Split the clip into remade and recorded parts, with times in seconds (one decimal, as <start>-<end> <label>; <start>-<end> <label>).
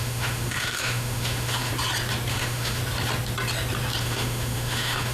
0.0-1.7 remade; 1.7-2.3 recorded; 2.3-2.8 remade; 2.8-4.0 recorded; 4.0-5.1 remade